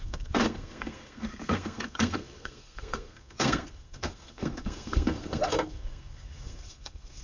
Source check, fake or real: fake